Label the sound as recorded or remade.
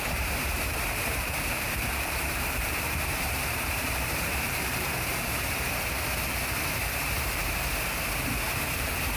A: remade